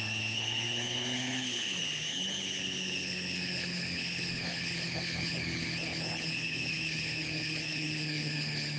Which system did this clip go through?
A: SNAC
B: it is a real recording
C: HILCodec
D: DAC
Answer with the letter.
C